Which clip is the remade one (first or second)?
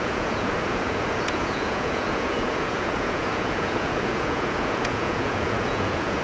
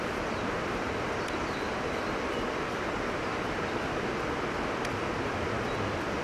first